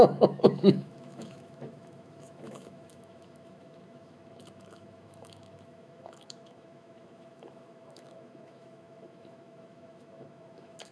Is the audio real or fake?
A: fake